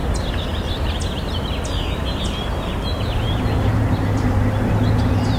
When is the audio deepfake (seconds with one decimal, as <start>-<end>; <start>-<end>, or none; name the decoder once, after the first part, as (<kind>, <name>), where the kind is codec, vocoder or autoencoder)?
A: none